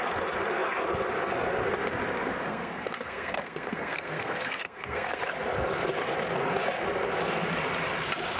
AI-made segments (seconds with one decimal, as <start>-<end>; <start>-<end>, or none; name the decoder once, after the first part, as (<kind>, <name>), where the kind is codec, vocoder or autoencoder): 2.5-5.2 (codec, SNAC)